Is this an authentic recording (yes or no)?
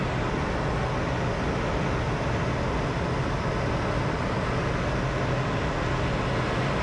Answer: yes